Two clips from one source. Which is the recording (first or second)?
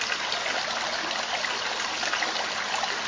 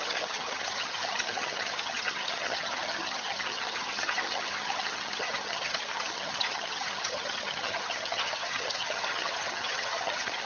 first